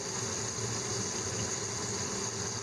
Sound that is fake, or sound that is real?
real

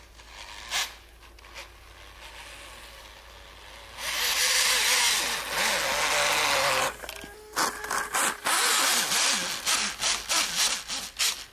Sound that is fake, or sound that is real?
real